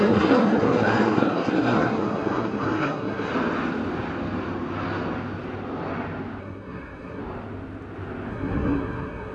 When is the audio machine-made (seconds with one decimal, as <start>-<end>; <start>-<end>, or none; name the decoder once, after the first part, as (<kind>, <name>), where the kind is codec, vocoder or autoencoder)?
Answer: 0.0-3.3 (codec, SNAC); 6.4-7.2; 8.3-9.3